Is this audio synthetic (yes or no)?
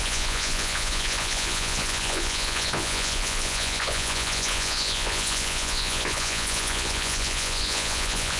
yes